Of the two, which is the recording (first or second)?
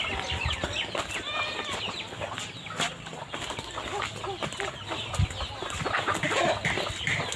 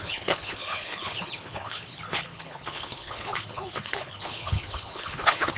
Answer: first